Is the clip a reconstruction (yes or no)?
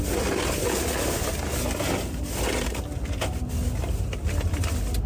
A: no